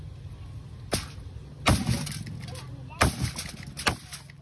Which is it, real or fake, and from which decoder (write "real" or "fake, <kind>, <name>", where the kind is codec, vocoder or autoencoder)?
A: real